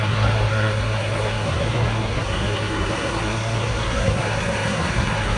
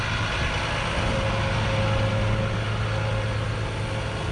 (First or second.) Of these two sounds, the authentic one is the second